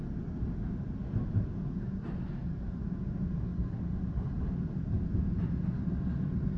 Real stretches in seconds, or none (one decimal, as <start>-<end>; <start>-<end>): 0.0-6.6